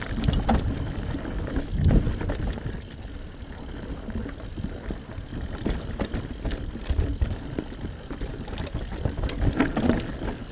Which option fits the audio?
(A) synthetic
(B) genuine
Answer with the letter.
B